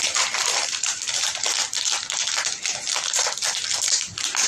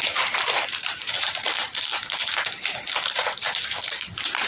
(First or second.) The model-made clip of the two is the second